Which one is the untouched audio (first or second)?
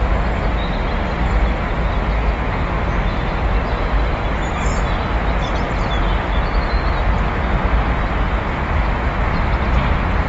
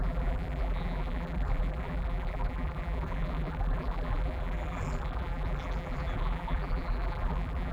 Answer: first